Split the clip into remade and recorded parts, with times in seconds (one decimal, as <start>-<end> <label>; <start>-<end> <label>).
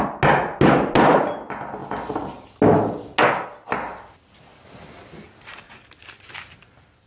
0.0-7.1 recorded